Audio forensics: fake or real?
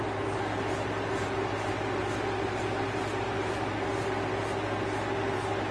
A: real